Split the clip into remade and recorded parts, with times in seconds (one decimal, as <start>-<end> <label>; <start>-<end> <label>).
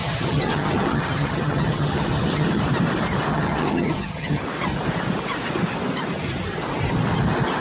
0.0-2.6 remade; 2.6-3.3 recorded; 3.3-4.4 remade; 4.4-7.6 recorded